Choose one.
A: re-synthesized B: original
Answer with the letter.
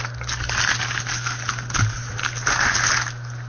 B